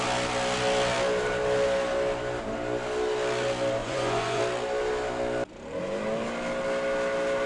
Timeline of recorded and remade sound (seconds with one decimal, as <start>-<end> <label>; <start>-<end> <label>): 0.0-3.8 recorded; 3.8-4.4 remade; 4.4-7.5 recorded